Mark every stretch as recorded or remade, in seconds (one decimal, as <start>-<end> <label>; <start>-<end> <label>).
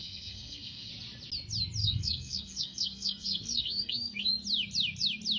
0.0-0.9 remade; 0.9-1.8 recorded; 1.8-4.3 remade; 4.3-5.4 recorded